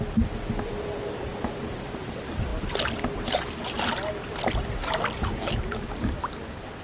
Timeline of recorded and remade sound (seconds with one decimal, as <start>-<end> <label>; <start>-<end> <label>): 0.0-6.8 recorded